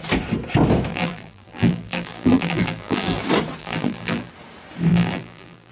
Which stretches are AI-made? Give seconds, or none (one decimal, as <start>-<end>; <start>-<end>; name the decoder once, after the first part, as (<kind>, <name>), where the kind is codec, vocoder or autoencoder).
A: 0.9-3.2 (vocoder, BigVGAN v2); 3.6-4.3; 4.9-5.7